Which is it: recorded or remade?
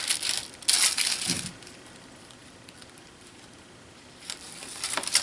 recorded